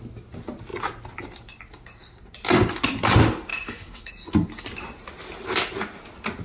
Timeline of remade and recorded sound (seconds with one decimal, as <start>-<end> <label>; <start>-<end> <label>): 0.0-3.5 recorded; 3.5-4.1 remade; 4.1-6.4 recorded